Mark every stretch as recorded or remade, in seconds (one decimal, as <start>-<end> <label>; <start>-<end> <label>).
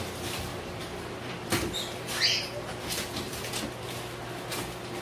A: 0.0-0.5 recorded; 0.5-3.5 remade; 3.5-5.0 recorded